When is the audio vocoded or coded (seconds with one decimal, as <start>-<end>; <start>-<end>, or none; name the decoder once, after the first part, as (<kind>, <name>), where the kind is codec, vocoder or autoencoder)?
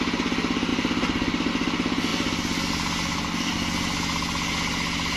none